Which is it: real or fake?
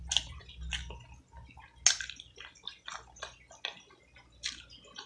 real